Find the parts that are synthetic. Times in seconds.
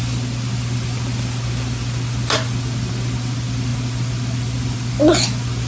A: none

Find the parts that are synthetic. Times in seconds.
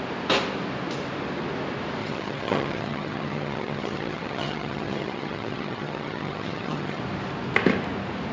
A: 2.0-7.0 (vocoder, HiFi-GAN)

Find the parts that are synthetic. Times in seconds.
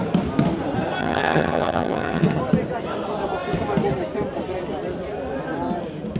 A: 1.0-2.4 (vocoder, HiFi-GAN)